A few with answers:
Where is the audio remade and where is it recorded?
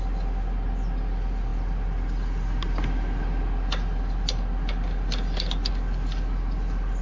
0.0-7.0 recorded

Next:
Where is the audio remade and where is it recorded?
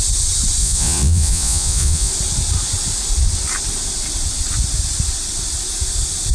0.0-0.6 recorded; 0.6-2.1 remade; 2.1-6.3 recorded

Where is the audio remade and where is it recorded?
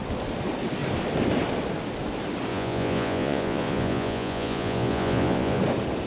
0.0-2.5 recorded; 2.5-5.6 remade; 5.6-6.1 recorded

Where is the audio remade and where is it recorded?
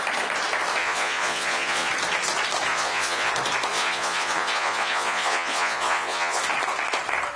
0.0-0.8 recorded; 0.8-1.9 remade; 1.9-2.7 recorded; 2.7-3.3 remade; 3.3-3.7 recorded; 3.7-6.4 remade; 6.4-7.4 recorded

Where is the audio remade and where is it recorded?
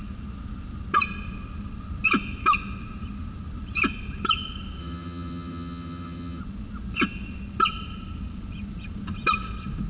0.0-4.8 recorded; 4.8-6.4 remade; 6.4-9.9 recorded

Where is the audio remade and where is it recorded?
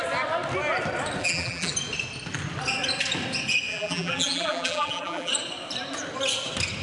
0.0-1.2 recorded; 1.2-1.7 remade; 1.7-3.7 recorded; 3.7-5.3 remade; 5.3-6.8 recorded